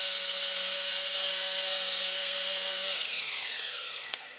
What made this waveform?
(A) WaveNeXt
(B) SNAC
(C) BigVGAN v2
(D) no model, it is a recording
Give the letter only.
B